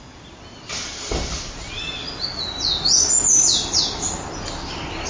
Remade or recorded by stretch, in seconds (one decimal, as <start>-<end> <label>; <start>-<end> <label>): 0.0-5.1 recorded